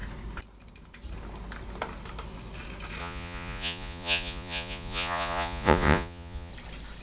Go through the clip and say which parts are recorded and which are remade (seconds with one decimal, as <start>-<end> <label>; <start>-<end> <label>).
0.0-3.0 recorded; 3.0-6.5 remade; 6.5-7.0 recorded